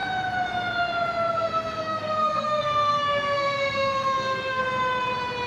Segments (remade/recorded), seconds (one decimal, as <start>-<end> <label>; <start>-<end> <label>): 0.0-1.3 recorded; 1.3-4.6 remade; 4.6-5.5 recorded